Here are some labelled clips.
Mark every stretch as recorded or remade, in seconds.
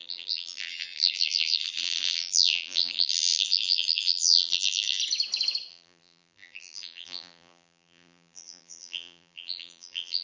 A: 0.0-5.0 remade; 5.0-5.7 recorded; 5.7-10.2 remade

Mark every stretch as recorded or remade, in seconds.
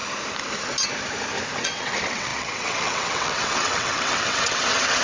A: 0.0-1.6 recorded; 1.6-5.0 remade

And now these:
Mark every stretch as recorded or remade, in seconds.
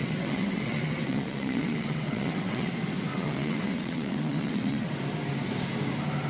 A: 0.0-2.7 remade; 2.7-3.1 recorded; 3.1-4.9 remade; 4.9-6.3 recorded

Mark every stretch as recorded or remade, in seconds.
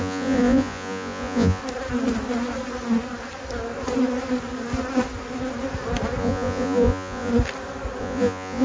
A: 0.0-1.6 remade; 1.6-6.2 recorded; 6.2-7.3 remade; 7.3-8.0 recorded; 8.0-8.6 remade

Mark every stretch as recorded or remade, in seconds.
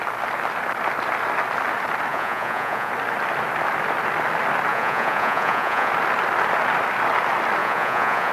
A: 0.0-2.1 recorded; 2.1-2.9 remade; 2.9-4.7 recorded; 4.7-5.9 remade; 5.9-7.6 recorded; 7.6-8.3 remade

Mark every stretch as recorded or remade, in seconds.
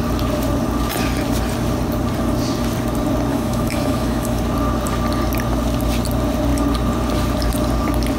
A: 0.0-3.3 recorded; 3.3-4.4 remade; 4.4-8.2 recorded